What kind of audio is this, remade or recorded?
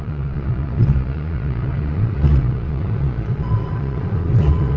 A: remade